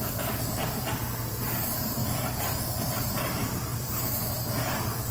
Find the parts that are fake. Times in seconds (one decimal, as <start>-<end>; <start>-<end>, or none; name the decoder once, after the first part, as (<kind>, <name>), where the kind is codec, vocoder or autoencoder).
0.0-5.1 (vocoder, BigVGAN v2)